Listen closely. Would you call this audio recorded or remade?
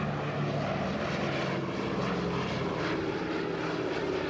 recorded